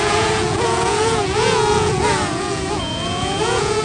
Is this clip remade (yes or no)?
yes